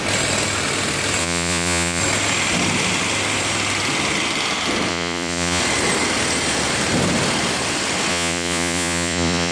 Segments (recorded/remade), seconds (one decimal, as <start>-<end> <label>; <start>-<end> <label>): 0.0-1.2 recorded; 1.2-2.0 remade; 2.0-4.9 recorded; 4.9-5.6 remade; 5.6-8.1 recorded; 8.1-9.5 remade